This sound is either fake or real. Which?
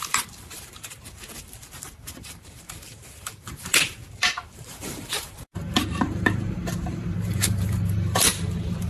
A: fake